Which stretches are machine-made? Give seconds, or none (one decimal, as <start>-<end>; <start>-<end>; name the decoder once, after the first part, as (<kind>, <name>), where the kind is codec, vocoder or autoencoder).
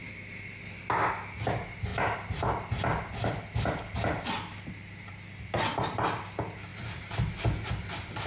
none